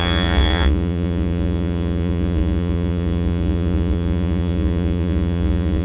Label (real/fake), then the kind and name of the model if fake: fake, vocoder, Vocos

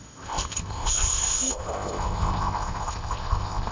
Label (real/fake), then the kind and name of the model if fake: fake, codec, ZipCodec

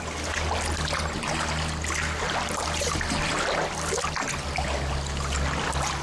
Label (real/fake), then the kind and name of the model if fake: real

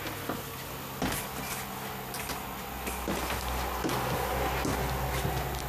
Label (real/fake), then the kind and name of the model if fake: real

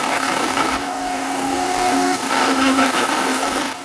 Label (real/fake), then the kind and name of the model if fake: fake, codec, DAC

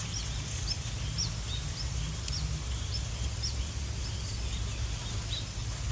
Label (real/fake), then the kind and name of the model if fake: real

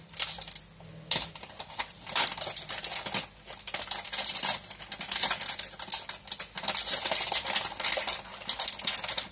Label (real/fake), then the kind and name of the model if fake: real